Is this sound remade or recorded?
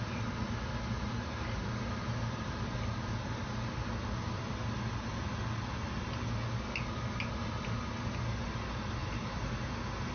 recorded